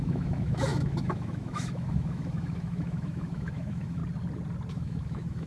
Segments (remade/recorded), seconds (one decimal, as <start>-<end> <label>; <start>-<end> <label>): 0.0-4.0 remade; 4.0-4.7 recorded; 4.7-5.5 remade